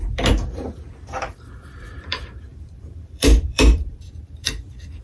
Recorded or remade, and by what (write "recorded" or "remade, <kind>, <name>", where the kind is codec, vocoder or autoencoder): remade, vocoder, BigVGAN v2